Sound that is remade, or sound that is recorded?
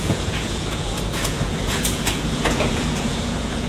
remade